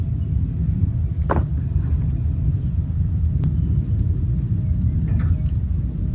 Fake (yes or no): no